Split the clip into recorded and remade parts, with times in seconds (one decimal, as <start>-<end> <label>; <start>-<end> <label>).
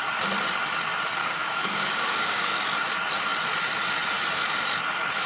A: 0.0-1.2 recorded; 1.2-2.5 remade; 2.5-5.3 recorded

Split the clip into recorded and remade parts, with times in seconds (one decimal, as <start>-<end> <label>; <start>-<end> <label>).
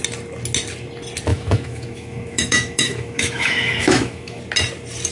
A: 0.0-1.3 recorded; 1.3-4.4 remade; 4.4-5.1 recorded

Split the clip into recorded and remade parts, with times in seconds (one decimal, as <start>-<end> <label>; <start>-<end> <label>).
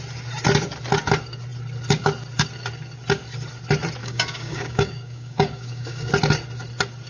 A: 0.0-4.0 recorded; 4.0-6.1 remade; 6.1-7.1 recorded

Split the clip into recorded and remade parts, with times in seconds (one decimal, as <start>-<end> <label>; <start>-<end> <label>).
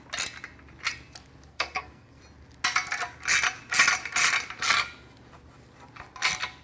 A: 0.0-1.5 recorded; 1.5-2.2 remade; 2.2-6.6 recorded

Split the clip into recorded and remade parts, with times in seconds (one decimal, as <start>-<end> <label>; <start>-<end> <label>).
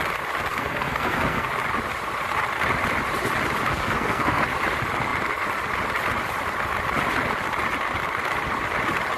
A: 0.0-0.5 recorded; 0.5-1.5 remade; 1.5-3.7 recorded; 3.7-4.4 remade; 4.4-9.2 recorded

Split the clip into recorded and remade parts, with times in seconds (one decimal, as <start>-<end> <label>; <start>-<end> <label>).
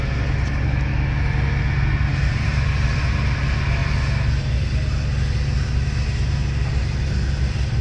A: 0.0-2.1 recorded; 2.1-3.1 remade; 3.1-7.8 recorded